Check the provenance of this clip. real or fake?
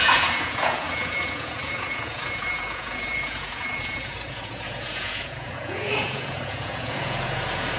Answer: fake